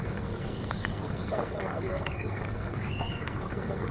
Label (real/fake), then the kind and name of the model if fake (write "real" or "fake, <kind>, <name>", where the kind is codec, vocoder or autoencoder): fake, codec, SNAC